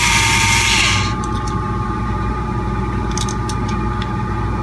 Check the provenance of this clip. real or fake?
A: real